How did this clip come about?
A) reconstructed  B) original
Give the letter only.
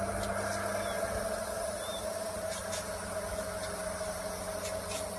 B